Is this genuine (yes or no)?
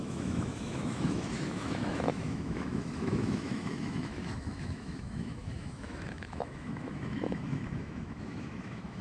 no